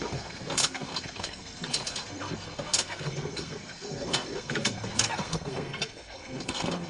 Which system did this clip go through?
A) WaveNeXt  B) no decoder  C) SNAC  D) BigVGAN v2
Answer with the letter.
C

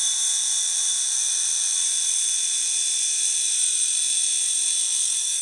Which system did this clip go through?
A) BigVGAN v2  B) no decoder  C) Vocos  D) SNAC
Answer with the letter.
A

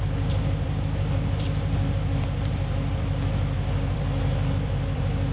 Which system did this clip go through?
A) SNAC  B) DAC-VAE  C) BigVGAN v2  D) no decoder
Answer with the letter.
C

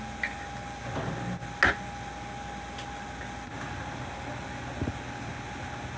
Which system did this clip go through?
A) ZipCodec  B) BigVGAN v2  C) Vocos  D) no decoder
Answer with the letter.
D